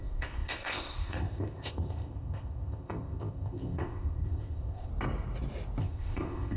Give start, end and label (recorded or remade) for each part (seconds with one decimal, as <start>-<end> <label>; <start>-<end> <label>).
0.0-4.9 remade; 4.9-5.8 recorded; 5.8-6.6 remade